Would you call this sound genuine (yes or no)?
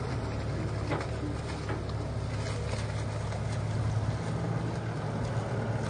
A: yes